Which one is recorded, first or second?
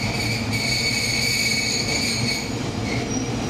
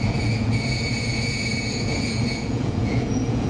first